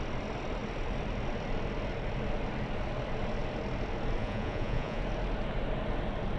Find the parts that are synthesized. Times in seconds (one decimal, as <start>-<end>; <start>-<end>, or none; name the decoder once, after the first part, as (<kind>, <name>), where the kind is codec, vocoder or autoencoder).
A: 4.2-5.0 (vocoder, Vocos)